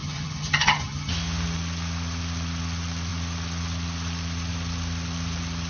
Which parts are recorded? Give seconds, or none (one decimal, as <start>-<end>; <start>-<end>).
1.1-5.7